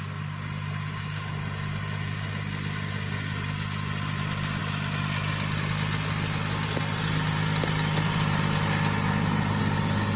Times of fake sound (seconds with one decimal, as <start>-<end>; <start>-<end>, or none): none

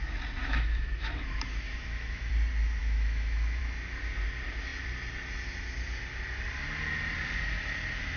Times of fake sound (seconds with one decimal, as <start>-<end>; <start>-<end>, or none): 0.4-2.3; 2.8-3.6

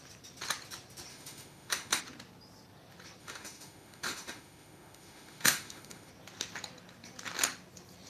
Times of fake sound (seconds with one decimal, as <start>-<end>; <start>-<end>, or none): 1.1-2.0; 3.2-6.1